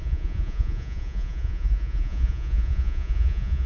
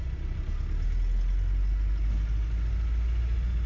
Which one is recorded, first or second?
second